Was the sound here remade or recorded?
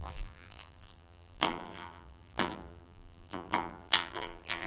remade